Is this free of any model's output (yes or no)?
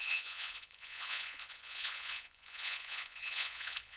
no